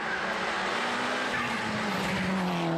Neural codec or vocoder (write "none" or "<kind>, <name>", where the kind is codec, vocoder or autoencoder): none